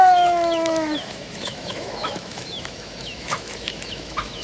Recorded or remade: remade